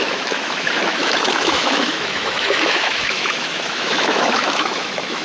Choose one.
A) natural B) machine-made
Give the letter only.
B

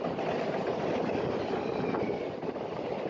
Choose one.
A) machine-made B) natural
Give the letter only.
B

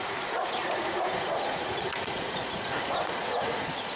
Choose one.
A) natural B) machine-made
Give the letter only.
B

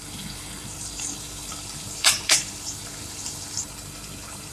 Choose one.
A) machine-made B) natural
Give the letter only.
A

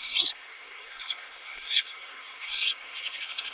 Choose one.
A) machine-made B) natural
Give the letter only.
A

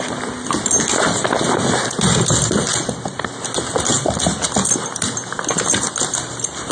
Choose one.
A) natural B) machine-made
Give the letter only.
A